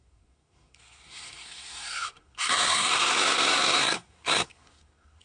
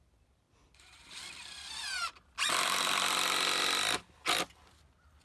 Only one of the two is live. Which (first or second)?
second